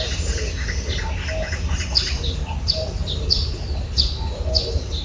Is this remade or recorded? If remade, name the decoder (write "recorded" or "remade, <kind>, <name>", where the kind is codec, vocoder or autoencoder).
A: recorded